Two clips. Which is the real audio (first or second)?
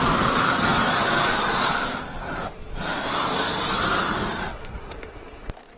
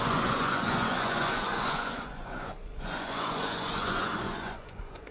first